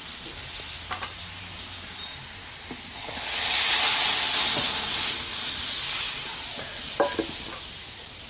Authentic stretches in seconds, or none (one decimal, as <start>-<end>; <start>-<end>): 0.0-8.3